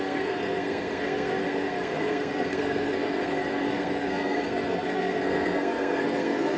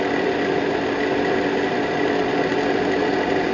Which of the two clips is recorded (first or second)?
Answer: second